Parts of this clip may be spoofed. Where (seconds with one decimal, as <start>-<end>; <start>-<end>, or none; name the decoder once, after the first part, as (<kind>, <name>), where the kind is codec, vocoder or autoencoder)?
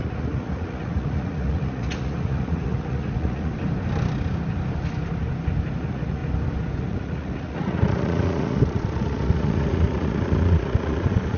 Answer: 0.0-3.5 (vocoder, Vocos); 5.8-6.2; 6.8-11.4